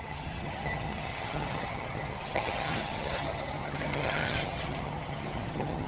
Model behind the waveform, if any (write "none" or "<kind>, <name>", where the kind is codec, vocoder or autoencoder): vocoder, HiFi-GAN